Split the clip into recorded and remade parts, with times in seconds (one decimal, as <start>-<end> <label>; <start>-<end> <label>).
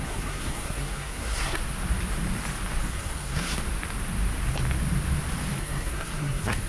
0.0-1.6 remade; 1.6-2.9 recorded; 2.9-3.6 remade; 3.6-5.6 recorded; 5.6-6.7 remade